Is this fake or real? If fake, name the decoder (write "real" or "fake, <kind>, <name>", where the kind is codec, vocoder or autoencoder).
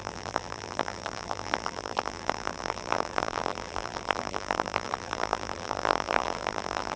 fake, vocoder, BigVGAN v2